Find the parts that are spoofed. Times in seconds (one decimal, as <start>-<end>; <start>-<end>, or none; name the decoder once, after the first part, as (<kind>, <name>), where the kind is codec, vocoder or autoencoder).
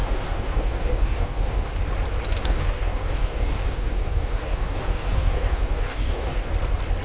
0.0-1.7 (codec, DAC); 2.3-6.5